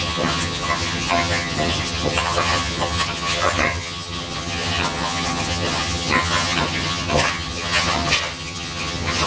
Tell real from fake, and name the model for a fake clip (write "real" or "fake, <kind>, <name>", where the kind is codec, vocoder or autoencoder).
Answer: fake, vocoder, HiFi-GAN